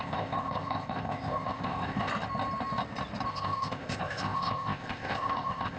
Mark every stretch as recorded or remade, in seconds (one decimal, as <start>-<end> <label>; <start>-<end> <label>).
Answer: 0.0-2.1 remade; 2.1-3.3 recorded; 3.3-5.8 remade